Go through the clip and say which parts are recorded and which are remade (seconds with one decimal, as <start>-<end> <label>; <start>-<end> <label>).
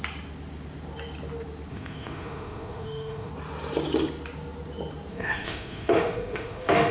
0.0-1.7 recorded; 1.7-3.3 remade; 3.3-5.1 recorded; 5.1-6.9 remade